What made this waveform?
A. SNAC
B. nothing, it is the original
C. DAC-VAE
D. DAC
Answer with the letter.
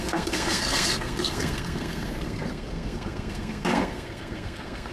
A